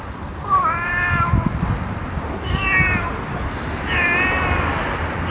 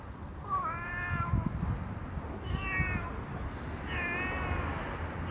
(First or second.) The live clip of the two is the second